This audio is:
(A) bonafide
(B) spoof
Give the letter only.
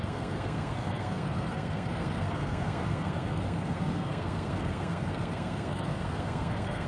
B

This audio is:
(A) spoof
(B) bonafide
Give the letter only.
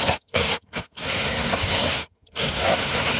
A